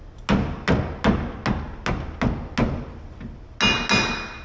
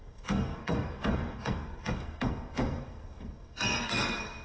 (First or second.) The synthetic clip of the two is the second